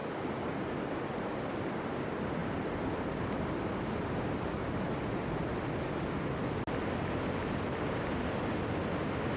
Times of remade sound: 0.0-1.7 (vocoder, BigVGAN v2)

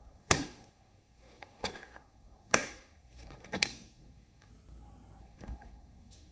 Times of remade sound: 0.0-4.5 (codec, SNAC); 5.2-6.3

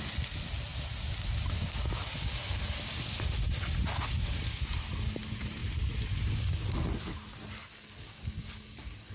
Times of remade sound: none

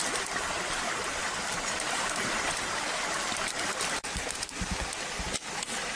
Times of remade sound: 1.2-4.8 (vocoder, BigVGAN v2)